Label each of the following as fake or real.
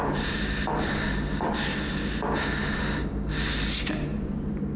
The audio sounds real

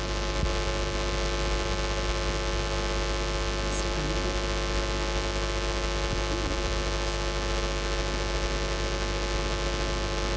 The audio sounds real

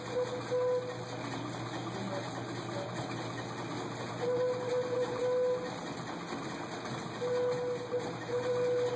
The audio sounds real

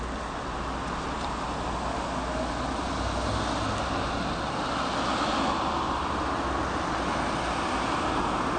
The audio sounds real